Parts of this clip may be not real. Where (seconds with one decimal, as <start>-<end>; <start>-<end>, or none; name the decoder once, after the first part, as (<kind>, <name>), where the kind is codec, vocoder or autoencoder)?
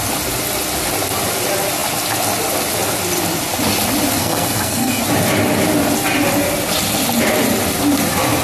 4.2-5.0 (codec, SNAC)